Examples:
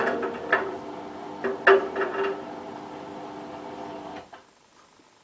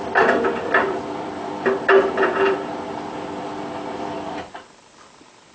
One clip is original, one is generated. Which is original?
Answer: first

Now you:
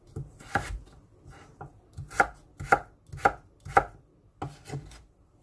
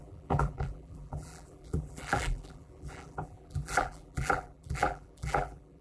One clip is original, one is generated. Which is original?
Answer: first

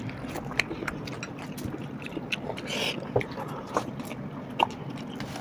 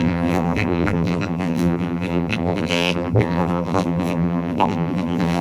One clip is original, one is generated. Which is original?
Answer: first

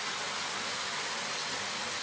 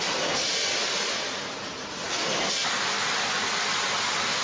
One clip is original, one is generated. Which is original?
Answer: first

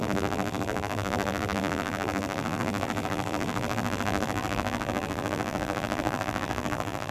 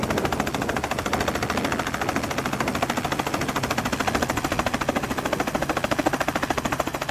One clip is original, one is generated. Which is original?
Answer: second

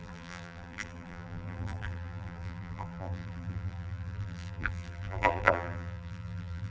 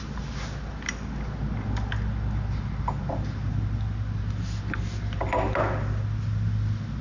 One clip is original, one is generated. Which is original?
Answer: second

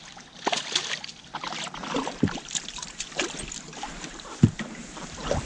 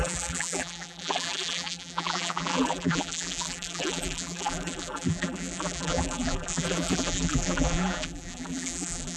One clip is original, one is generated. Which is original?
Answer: first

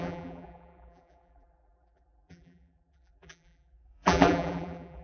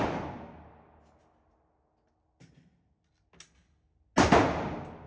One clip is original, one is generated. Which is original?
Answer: second